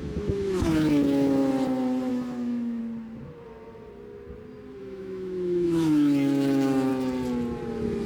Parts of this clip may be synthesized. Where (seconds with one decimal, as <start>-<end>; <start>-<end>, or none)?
0.0-1.4; 2.1-2.8; 4.8-6.9